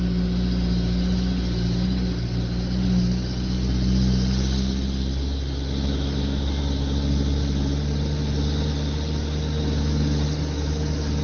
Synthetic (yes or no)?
no